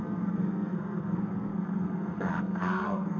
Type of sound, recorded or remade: remade